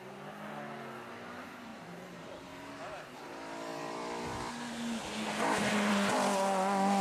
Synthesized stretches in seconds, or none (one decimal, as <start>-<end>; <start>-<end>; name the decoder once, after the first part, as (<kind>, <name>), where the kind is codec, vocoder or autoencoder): 1.7-3.3 (vocoder, BigVGAN v2)